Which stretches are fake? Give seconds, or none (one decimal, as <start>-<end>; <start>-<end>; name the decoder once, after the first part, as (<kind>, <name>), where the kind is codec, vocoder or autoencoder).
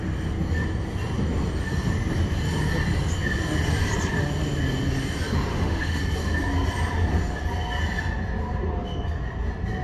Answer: 5.5-6.0 (autoencoder, DAC-VAE)